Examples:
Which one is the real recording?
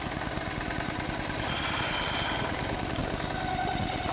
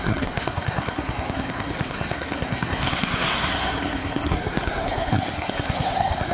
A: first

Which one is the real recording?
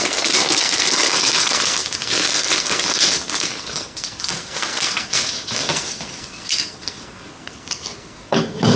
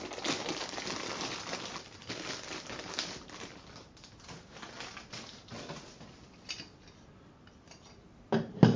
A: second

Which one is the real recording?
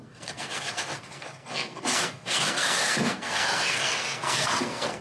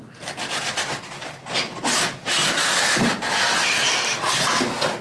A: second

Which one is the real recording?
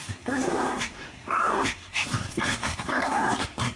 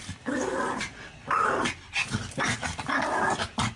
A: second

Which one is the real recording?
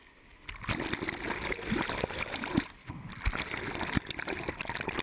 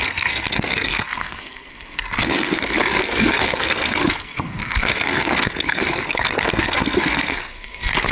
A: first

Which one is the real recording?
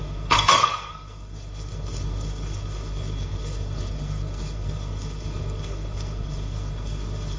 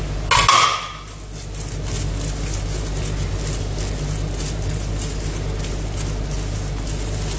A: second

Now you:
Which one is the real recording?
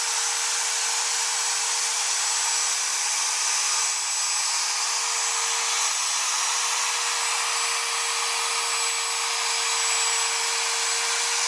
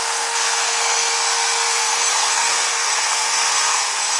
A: first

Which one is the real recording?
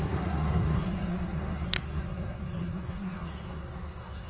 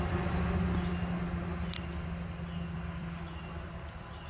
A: second